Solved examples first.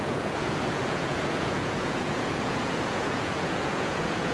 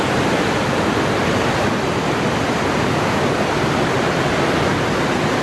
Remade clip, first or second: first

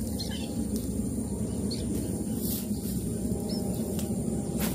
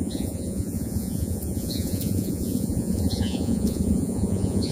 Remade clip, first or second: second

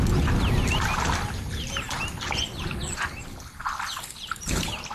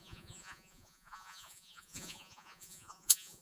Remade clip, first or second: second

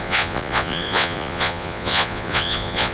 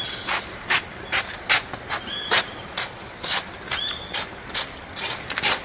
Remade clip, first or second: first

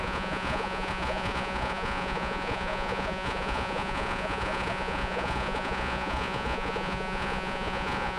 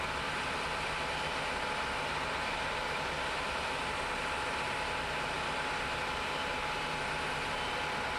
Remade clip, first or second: first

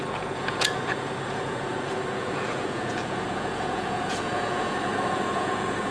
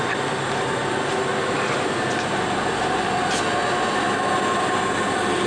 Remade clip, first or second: first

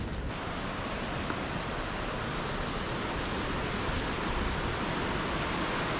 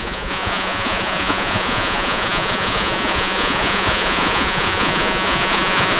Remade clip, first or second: second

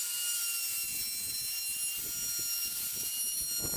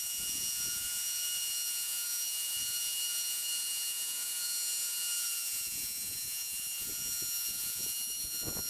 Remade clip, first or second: second